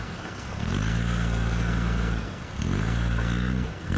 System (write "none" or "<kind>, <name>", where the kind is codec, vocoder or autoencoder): codec, SNAC